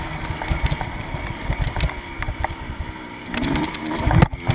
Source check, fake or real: real